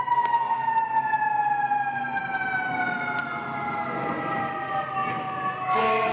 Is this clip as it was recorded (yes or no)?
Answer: yes